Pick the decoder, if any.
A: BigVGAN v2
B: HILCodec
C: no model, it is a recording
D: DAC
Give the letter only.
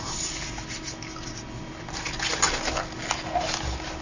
C